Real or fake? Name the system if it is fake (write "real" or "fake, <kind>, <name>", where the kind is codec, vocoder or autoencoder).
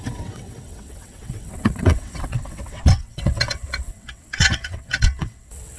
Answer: fake, vocoder, WaveNeXt